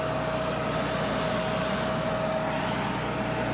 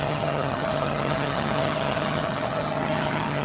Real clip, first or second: first